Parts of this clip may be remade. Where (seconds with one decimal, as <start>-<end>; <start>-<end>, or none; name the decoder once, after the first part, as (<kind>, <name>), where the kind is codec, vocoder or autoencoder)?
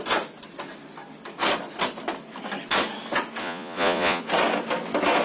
3.4-4.2 (vocoder, Vocos)